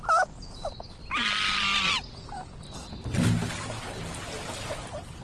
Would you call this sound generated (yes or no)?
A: no